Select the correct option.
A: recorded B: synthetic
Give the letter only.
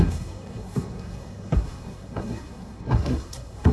B